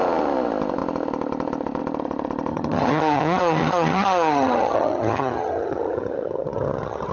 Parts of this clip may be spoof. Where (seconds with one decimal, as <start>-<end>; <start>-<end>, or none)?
2.5-7.1